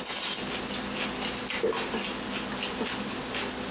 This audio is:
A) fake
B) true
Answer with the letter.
B